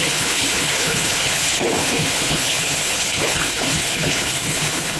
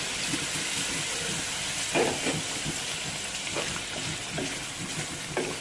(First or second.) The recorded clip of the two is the second